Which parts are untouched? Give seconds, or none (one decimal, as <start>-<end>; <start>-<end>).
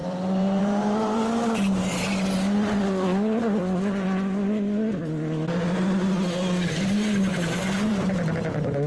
1.8-7.3; 8.3-8.9